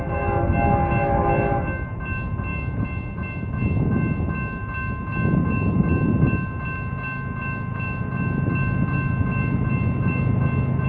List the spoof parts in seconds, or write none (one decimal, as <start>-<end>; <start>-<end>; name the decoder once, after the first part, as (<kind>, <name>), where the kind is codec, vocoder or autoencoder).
none